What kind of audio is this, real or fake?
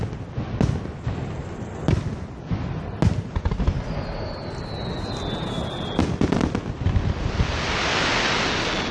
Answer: real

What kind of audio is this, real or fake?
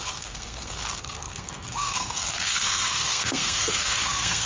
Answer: fake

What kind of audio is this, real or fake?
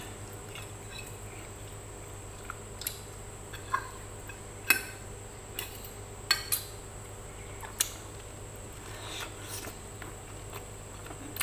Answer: real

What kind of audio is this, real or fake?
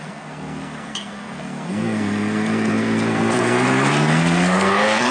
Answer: fake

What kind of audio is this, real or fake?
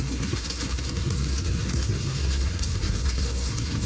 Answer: fake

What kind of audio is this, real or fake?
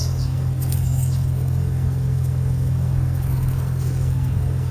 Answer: fake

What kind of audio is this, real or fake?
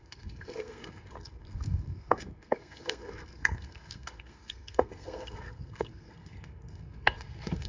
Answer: fake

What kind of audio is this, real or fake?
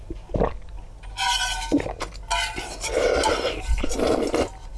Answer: real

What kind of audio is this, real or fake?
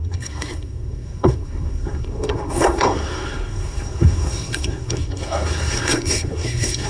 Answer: fake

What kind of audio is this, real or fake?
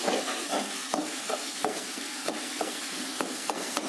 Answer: fake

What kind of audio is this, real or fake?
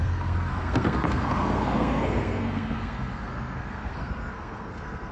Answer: fake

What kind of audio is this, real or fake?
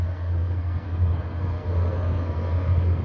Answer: fake